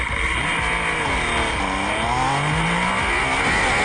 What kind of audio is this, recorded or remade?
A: recorded